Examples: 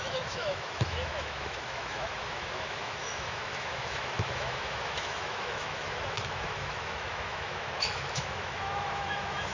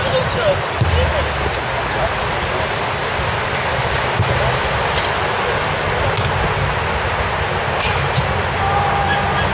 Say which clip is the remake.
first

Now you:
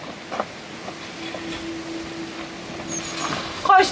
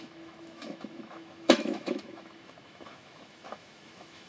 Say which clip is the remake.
second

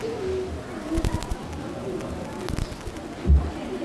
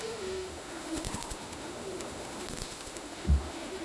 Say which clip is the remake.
second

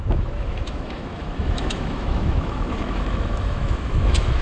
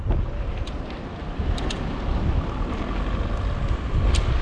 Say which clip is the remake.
first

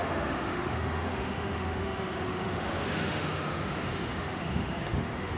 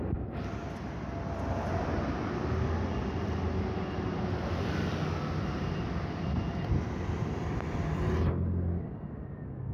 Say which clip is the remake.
first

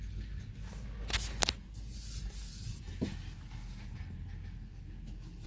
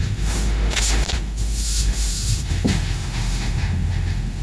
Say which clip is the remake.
second